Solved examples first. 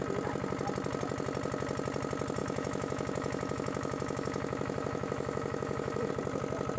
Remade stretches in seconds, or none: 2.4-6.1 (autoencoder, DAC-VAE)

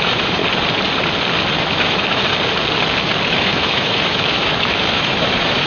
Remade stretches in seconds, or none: 0.0-0.4 (autoencoder, DAC-VAE); 1.6-2.3; 3.3-5.7

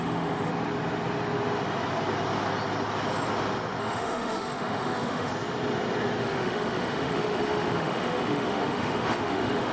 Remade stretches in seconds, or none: 0.0-0.5 (autoencoder, DAC-VAE); 3.8-5.3; 6.2-9.7